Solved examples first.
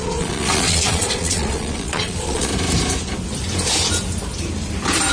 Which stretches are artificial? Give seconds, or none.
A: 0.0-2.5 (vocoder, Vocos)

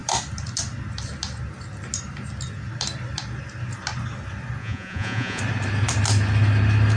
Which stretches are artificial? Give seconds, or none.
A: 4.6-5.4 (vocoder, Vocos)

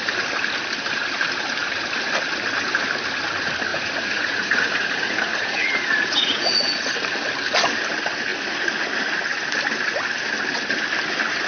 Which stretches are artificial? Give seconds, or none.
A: 3.7-6.8 (vocoder, Vocos)

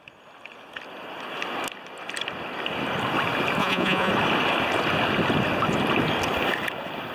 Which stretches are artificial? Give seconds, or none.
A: 3.6-4.1 (vocoder, Vocos)

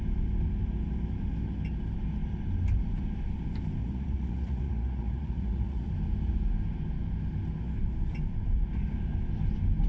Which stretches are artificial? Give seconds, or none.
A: 3.8-5.9 (vocoder, Vocos)

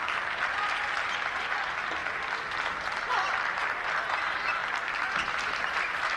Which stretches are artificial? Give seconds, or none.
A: none